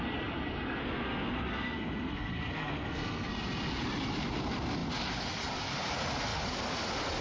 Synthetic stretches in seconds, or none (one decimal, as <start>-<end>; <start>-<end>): 0.8-3.3